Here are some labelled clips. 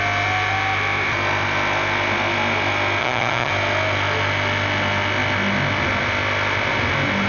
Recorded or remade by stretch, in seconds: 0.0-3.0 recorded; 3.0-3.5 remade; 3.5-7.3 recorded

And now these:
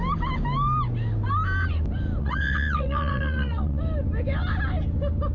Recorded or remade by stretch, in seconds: 0.0-2.2 recorded; 2.2-3.8 remade; 3.8-5.3 recorded

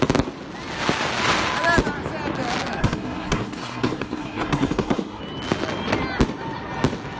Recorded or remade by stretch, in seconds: 0.0-2.8 recorded; 2.8-5.2 remade; 5.2-7.2 recorded

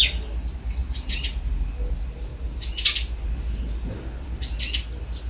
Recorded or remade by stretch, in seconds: 0.0-5.3 recorded

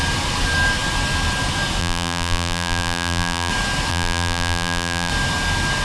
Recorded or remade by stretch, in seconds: 0.0-1.8 recorded; 1.8-3.5 remade; 3.5-3.9 recorded; 3.9-5.1 remade; 5.1-5.8 recorded

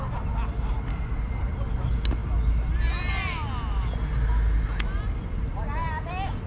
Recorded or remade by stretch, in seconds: 0.0-0.9 recorded; 0.9-1.4 remade; 1.4-6.5 recorded

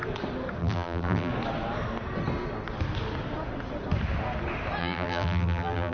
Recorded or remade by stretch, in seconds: 0.0-0.6 recorded; 0.6-1.3 remade; 1.3-4.8 recorded; 4.8-5.9 remade

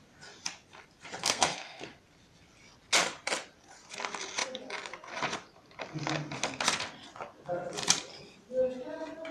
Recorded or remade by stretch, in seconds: 0.0-1.2 recorded; 1.2-1.9 remade; 1.9-9.3 recorded